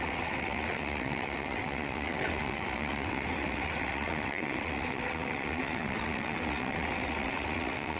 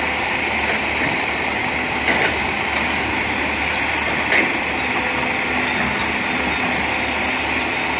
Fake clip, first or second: first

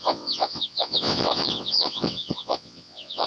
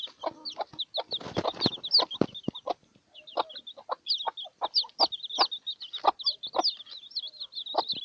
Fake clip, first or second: first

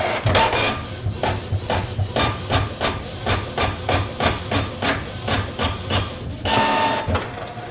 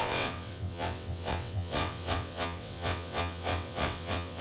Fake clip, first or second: second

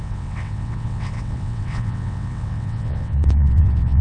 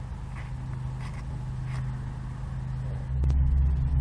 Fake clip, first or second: first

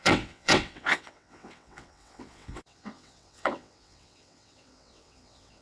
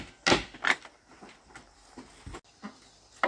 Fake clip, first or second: first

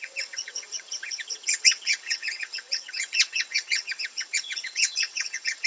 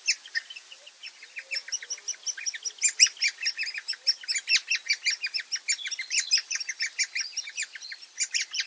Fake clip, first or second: first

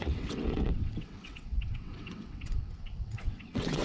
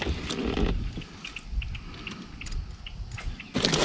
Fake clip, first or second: first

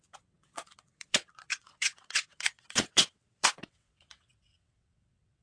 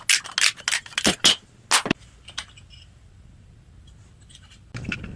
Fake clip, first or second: first